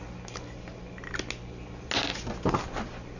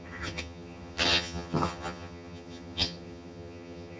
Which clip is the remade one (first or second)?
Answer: second